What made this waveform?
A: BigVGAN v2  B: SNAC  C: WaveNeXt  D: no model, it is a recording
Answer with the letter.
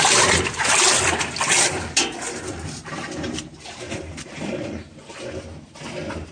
D